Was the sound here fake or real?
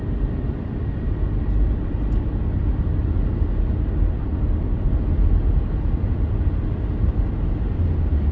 real